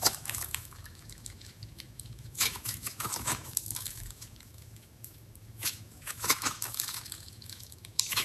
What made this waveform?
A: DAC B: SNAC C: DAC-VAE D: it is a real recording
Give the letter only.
C